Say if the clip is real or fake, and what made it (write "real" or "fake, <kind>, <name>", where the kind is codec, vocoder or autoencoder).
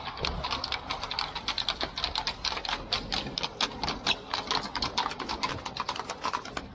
real